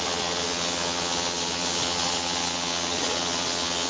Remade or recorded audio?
remade